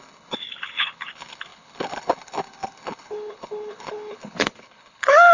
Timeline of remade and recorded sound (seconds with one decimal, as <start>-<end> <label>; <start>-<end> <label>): 0.0-5.3 remade